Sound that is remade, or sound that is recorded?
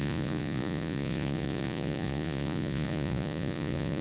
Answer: remade